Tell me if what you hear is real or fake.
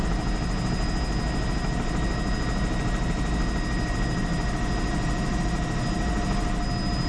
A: real